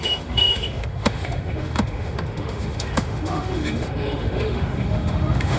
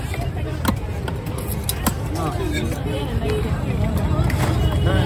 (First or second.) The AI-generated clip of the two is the first